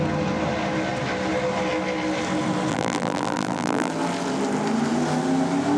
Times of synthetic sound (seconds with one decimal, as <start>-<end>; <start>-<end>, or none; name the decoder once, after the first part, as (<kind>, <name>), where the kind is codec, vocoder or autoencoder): 2.7-3.9 (vocoder, BigVGAN v2)